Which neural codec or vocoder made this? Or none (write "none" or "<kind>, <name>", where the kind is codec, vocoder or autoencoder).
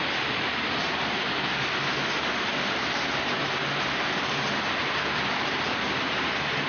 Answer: none